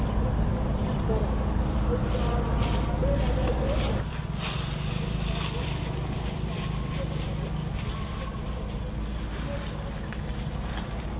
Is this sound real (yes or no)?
yes